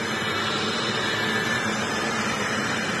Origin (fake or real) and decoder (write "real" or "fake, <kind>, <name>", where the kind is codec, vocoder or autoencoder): real